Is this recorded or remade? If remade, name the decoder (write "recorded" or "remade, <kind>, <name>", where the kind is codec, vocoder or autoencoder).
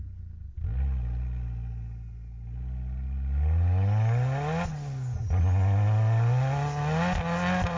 recorded